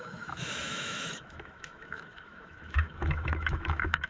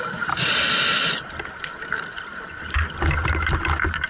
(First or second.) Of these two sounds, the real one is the second